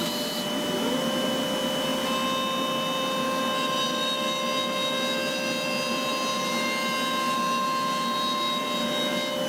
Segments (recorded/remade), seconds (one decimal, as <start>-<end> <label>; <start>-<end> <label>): 0.0-9.5 recorded